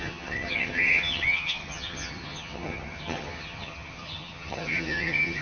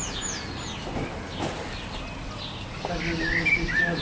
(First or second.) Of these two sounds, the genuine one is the second